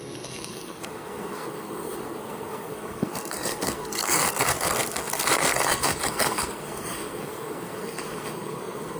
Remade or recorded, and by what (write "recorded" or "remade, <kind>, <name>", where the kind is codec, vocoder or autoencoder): remade, codec, SNAC